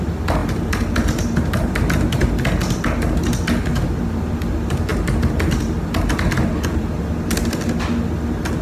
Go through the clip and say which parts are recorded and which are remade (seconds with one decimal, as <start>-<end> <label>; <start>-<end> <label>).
0.0-0.4 recorded; 0.4-2.3 remade; 2.3-3.7 recorded; 3.7-4.3 remade; 4.3-8.6 recorded